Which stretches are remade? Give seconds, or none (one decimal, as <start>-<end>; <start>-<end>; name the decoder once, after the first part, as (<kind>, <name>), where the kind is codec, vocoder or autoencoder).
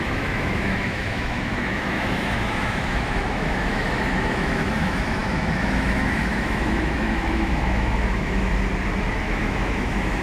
0.0-8.5 (autoencoder, DAC-VAE); 9.2-10.2